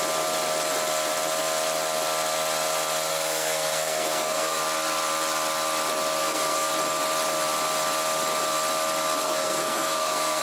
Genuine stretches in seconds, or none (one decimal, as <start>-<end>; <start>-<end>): 0.0-3.1; 4.6-6.2; 6.7-9.2